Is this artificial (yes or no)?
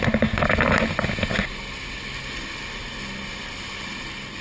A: no